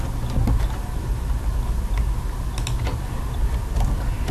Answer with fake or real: real